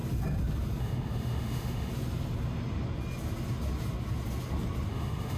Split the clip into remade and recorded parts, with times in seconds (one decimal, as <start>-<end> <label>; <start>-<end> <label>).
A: 0.0-0.8 recorded; 0.8-1.9 remade; 1.9-4.9 recorded; 4.9-5.4 remade